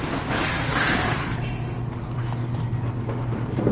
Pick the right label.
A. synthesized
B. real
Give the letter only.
B